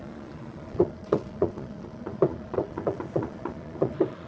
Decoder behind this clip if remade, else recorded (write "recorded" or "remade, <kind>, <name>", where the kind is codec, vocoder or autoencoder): remade, vocoder, Vocos